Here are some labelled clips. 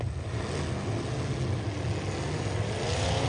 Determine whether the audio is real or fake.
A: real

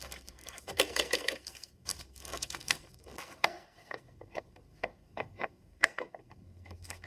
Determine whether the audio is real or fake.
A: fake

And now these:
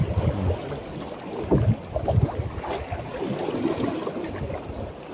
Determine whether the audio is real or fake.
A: real